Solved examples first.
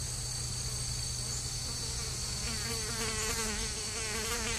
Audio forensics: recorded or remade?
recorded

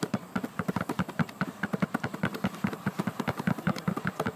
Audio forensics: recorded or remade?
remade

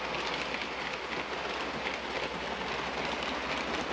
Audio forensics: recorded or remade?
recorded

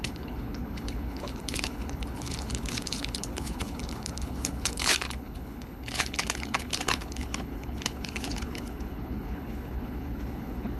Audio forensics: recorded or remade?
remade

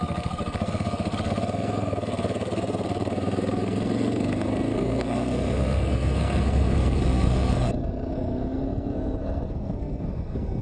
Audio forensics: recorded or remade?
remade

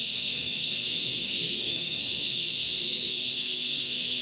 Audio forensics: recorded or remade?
remade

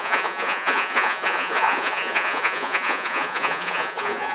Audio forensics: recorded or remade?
remade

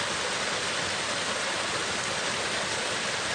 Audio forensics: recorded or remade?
recorded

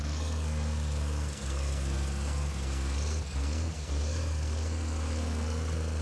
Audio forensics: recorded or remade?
remade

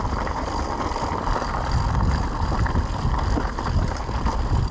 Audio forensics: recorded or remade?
remade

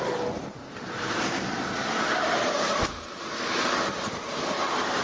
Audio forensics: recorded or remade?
recorded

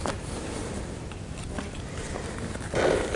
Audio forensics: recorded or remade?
recorded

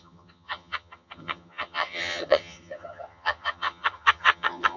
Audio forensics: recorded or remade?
remade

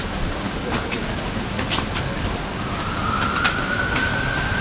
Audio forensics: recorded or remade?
recorded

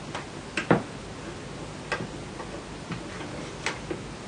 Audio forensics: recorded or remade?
recorded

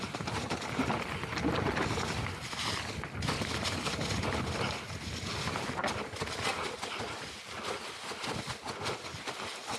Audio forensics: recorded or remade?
recorded